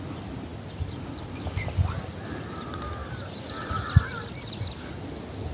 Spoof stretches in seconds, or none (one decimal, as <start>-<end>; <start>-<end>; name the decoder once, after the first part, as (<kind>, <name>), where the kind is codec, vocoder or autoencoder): none